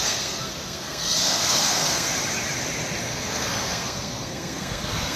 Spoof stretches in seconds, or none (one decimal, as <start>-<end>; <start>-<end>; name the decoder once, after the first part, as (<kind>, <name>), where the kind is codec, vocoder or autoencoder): 0.0-2.1 (codec, SNAC); 3.0-5.2